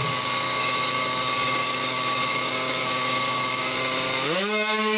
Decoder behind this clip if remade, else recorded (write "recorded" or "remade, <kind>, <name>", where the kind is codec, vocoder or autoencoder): remade, codec, DAC